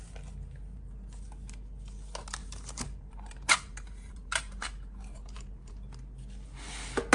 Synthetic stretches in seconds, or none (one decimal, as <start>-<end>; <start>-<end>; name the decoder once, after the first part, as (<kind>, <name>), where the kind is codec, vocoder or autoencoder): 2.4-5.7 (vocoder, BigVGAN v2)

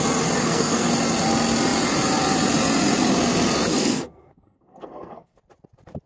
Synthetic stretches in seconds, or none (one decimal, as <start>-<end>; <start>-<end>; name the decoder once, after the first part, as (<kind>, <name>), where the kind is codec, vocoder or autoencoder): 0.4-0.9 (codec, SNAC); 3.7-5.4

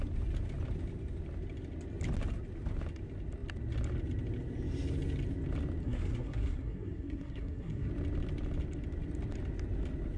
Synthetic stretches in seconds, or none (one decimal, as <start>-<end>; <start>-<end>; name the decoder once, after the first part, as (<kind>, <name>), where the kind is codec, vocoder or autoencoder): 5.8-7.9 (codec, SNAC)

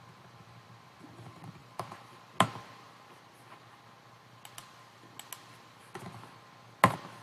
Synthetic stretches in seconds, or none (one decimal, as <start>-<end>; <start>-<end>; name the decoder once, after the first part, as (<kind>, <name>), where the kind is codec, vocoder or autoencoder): 1.6-2.2 (vocoder, BigVGAN v2)